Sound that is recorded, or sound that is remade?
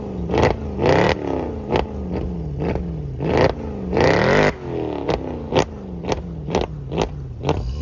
recorded